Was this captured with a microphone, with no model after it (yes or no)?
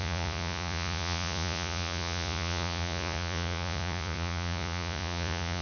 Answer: no